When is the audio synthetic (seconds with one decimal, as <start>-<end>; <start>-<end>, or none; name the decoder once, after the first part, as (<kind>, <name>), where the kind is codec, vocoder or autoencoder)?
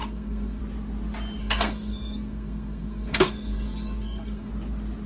0.0-0.6 (codec, SNAC); 1.4-4.5